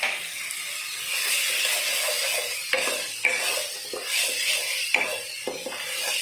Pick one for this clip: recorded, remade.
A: recorded